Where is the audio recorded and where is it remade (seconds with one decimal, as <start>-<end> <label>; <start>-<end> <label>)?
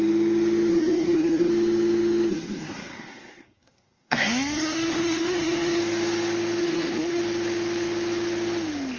0.0-0.7 recorded; 0.7-1.5 remade; 1.5-2.3 recorded; 2.3-5.8 remade; 5.8-6.6 recorded; 6.6-7.2 remade; 7.2-9.0 recorded